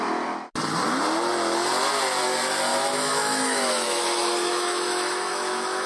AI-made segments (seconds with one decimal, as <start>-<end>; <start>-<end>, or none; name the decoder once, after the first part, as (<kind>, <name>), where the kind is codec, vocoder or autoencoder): 2.7-5.9 (autoencoder, DAC-VAE)